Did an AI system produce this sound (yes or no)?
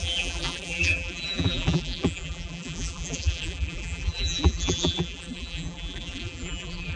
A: yes